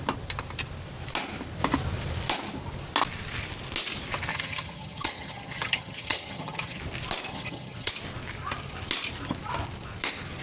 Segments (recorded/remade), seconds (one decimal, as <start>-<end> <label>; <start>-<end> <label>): 0.0-4.3 recorded; 4.3-6.8 remade; 6.8-7.3 recorded; 7.3-7.9 remade; 7.9-10.4 recorded